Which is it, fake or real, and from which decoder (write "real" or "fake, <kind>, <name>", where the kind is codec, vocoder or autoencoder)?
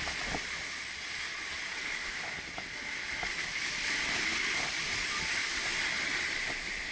fake, vocoder, BigVGAN v2